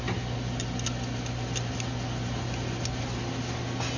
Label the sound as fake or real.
real